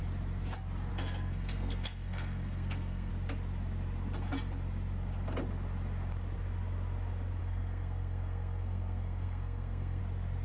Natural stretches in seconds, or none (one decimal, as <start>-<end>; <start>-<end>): 0.0-0.9; 3.1-7.4; 10.0-10.4